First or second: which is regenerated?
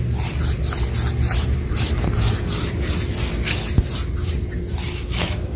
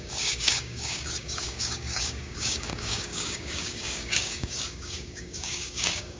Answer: second